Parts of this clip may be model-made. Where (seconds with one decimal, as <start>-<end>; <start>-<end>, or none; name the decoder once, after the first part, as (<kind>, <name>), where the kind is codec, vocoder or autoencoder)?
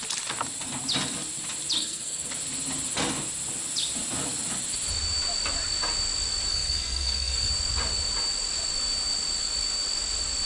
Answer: 1.8-2.3 (codec, SNAC); 6.5-7.5